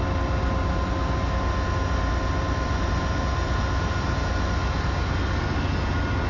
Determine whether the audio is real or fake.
real